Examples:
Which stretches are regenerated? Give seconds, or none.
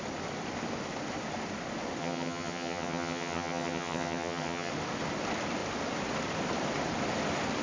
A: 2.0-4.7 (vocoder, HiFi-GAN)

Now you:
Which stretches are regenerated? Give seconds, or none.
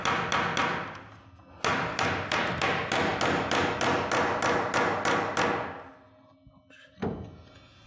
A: none